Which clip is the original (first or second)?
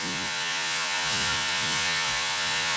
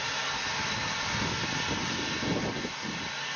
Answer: second